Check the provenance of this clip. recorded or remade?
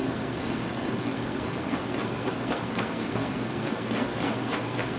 remade